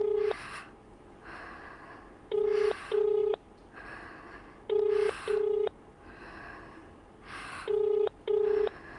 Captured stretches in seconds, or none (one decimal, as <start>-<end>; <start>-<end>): 0.0-9.0